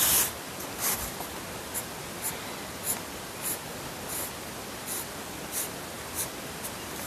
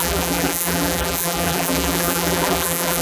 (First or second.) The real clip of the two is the first